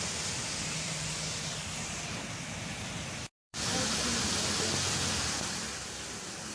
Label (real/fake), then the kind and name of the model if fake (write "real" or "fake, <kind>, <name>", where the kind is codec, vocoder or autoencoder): fake, vocoder, BigVGAN v2